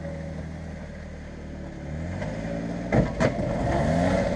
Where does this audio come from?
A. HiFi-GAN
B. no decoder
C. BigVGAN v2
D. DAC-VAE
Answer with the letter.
B